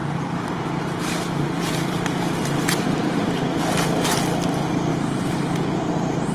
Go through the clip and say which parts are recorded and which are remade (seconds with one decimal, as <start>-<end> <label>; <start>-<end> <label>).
0.0-3.6 remade; 3.6-4.9 recorded; 4.9-6.3 remade